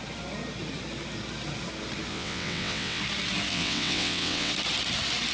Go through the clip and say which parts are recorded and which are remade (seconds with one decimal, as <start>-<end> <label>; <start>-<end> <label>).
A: 0.0-2.1 recorded; 2.1-3.0 remade; 3.0-3.5 recorded; 3.5-4.5 remade; 4.5-5.3 recorded